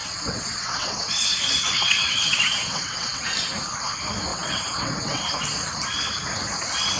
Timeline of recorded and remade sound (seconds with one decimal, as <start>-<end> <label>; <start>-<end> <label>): 0.0-1.4 remade; 1.4-1.8 recorded; 1.8-3.2 remade; 3.2-4.3 recorded; 4.3-5.2 remade; 5.2-7.0 recorded